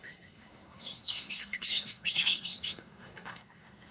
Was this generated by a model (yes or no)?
yes